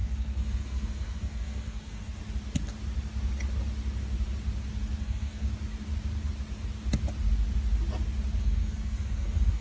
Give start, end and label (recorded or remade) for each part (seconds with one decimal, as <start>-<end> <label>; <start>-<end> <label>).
0.0-2.2 remade; 2.2-5.0 recorded; 5.0-5.5 remade; 5.5-8.4 recorded; 8.4-9.6 remade